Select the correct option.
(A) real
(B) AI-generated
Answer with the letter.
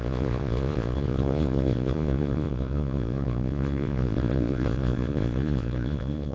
B